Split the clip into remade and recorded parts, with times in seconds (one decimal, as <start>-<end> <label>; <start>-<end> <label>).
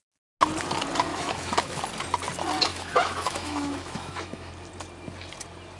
0.0-1.1 recorded; 1.1-1.8 remade; 1.8-2.7 recorded; 2.7-4.5 remade; 4.5-5.8 recorded